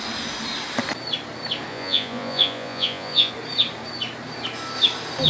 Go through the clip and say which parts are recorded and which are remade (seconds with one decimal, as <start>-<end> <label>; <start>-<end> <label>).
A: 0.0-1.7 recorded; 1.7-3.3 remade; 3.3-5.3 recorded